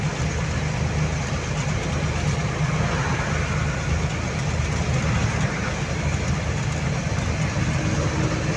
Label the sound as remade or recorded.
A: recorded